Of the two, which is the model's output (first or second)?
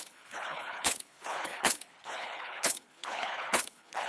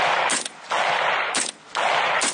first